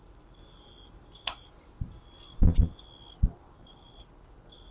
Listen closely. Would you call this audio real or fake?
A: real